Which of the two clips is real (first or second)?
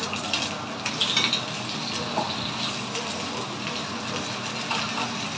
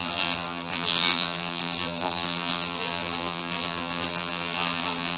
first